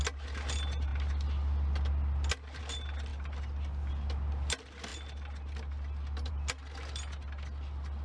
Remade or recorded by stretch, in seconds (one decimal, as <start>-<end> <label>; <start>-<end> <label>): 0.0-8.0 recorded